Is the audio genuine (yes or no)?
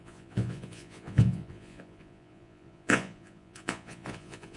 no